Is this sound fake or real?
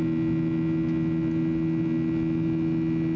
real